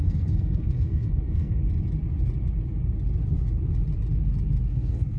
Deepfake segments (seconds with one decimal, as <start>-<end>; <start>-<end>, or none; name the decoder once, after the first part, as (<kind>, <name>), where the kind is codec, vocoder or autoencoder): 0.0-1.6 (codec, SNAC); 4.7-5.2